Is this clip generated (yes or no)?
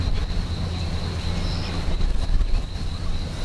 no